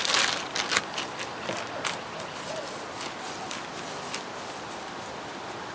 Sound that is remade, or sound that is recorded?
recorded